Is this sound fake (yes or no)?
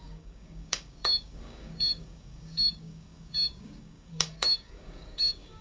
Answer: yes